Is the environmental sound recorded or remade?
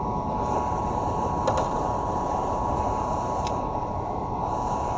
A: remade